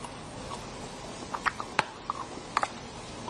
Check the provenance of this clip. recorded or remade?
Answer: recorded